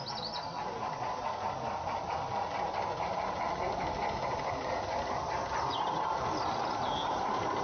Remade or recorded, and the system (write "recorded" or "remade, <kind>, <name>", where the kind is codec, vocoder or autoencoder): recorded